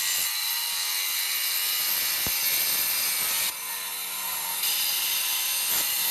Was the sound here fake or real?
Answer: real